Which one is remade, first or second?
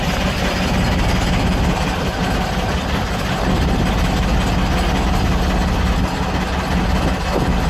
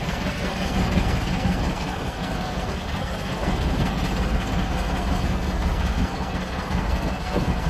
second